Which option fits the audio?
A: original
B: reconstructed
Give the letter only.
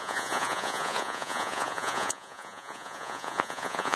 B